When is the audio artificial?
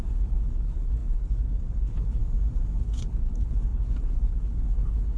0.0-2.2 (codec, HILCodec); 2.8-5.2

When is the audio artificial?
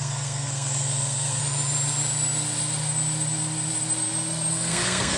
0.0-1.4 (codec, SNAC); 4.5-5.2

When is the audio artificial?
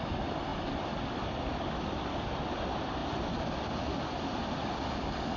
none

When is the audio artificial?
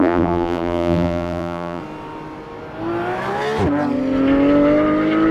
0.0-1.8 (vocoder, BigVGAN v2)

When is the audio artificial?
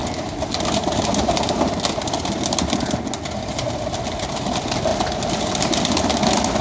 none